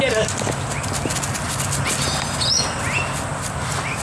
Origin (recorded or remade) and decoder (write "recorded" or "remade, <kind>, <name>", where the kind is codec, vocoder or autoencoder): recorded